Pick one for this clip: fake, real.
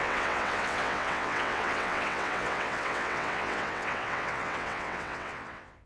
fake